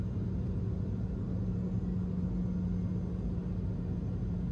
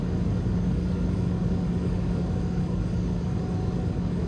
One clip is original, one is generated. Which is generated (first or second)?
second